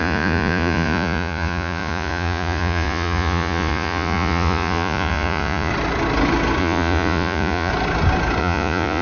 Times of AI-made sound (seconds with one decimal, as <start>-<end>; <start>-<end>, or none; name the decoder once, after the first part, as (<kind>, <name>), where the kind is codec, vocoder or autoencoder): 0.0-5.7 (vocoder, Vocos); 6.6-7.7; 8.4-9.0

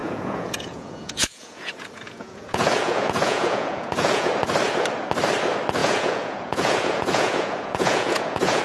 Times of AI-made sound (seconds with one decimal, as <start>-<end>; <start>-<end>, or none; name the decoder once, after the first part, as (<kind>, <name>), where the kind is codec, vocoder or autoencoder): 0.0-4.3 (vocoder, Vocos); 5.8-8.6

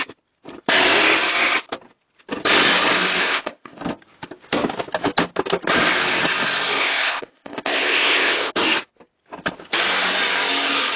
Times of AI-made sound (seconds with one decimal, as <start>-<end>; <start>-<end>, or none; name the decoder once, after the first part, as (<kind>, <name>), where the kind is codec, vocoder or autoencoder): 3.2-3.8 (codec, ZipCodec); 6.8-8.5

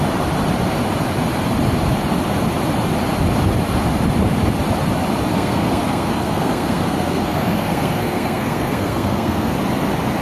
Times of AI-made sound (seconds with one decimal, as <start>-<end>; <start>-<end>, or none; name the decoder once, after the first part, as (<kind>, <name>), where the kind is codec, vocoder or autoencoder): 5.3-9.5 (codec, SNAC)

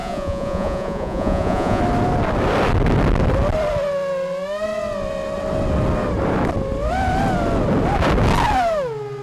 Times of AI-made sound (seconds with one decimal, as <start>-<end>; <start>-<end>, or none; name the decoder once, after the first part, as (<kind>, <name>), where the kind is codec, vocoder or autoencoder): 0.0-1.8 (vocoder, Vocos)

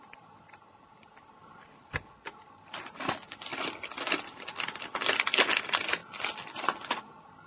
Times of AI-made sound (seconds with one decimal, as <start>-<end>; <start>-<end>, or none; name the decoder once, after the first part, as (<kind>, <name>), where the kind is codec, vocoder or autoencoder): none